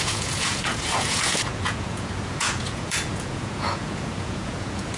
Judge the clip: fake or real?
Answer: fake